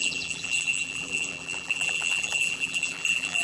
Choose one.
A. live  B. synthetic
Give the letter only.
B